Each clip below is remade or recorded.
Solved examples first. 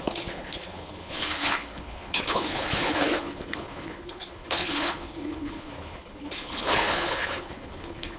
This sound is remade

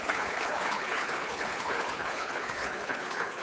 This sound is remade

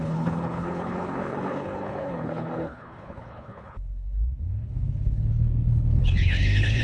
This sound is remade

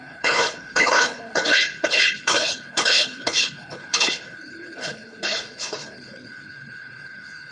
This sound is remade